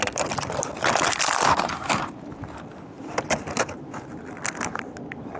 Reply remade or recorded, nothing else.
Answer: recorded